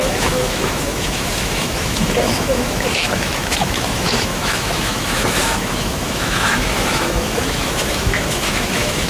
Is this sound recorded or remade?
remade